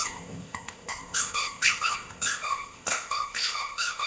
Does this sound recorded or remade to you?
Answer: remade